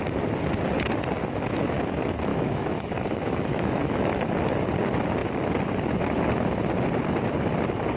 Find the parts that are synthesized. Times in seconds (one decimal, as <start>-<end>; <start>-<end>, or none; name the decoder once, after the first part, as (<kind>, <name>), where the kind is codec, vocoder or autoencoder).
1.2-1.8 (autoencoder, DAC-VAE); 2.3-4.3